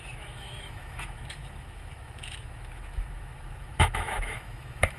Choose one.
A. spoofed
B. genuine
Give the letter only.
A